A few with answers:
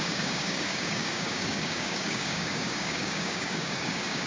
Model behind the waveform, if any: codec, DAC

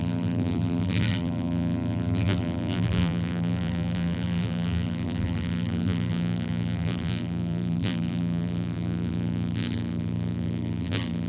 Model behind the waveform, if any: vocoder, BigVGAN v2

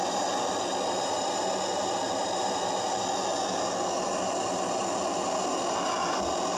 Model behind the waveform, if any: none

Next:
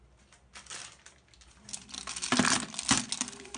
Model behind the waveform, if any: none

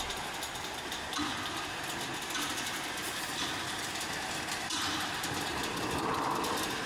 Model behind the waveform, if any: none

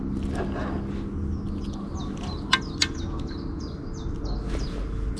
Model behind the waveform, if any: none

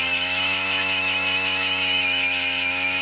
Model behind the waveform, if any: autoencoder, DAC-VAE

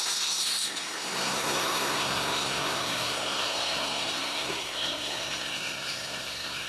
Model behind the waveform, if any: codec, SNAC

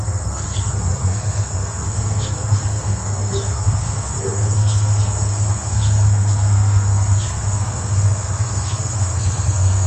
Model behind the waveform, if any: codec, SNAC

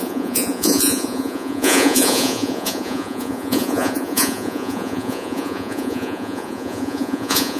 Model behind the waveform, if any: vocoder, Vocos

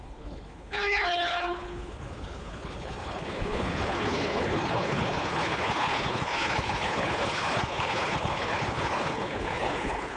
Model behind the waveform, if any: codec, HILCodec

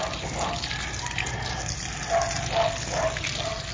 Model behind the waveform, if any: none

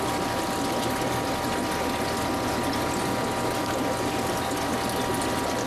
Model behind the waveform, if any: none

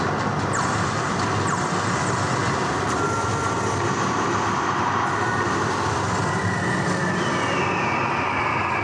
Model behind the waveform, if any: none